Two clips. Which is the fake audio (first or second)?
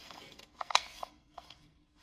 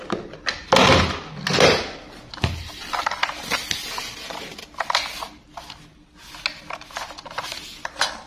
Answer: first